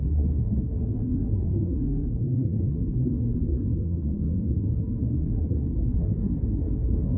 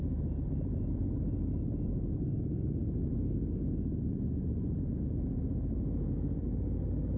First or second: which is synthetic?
first